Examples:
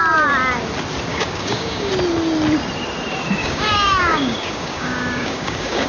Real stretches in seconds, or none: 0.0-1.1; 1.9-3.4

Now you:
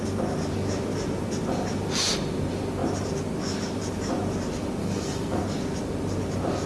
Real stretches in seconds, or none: 0.0-4.8; 5.4-6.7

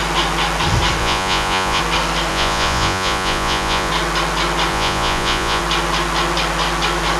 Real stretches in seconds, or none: 0.0-1.0; 1.8-2.3; 3.9-4.7; 5.6-7.2

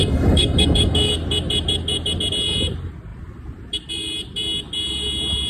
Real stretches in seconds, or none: 1.1-5.5